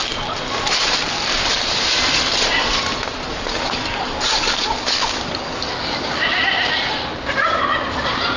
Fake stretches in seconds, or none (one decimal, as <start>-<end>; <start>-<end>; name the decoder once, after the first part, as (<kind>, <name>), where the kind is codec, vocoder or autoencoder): 3.3-6.2 (codec, DAC)

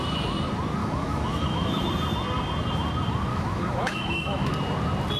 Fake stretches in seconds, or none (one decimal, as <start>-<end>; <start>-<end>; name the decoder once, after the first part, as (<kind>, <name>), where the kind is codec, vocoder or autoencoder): 0.8-1.9 (autoencoder, DAC-VAE); 3.3-4.5